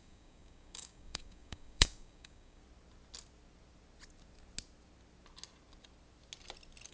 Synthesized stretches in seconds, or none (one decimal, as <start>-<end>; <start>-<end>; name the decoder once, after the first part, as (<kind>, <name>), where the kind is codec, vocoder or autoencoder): 0.0-2.6 (codec, DAC)